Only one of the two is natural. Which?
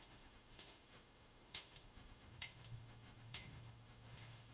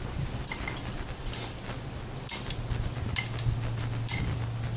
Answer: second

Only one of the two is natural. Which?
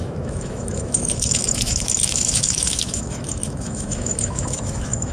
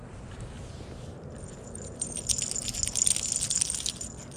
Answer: second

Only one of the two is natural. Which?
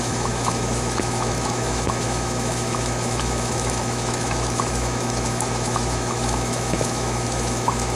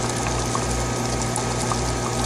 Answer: second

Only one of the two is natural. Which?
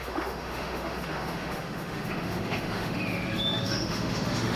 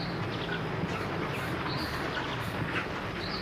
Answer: second